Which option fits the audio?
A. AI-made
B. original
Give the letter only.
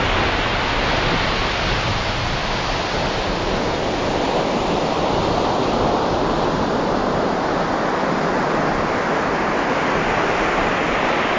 B